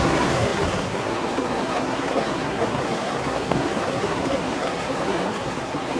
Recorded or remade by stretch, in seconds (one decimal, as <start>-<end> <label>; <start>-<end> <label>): 0.0-6.0 remade